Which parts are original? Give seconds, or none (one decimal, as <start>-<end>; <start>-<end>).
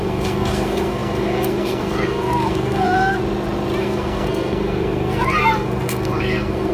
3.2-3.8